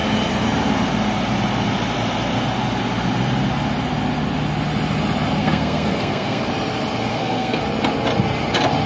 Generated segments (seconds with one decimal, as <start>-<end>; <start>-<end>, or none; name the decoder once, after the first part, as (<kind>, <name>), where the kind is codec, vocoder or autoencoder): 5.4-6.4 (codec, SNAC); 7.1-7.6